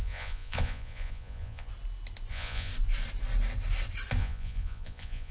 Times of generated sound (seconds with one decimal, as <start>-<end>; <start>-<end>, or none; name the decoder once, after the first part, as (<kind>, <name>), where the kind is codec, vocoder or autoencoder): 0.0-1.7 (vocoder, Vocos); 2.3-2.7; 4.2-5.3